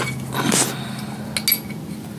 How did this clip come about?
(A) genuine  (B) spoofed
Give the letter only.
A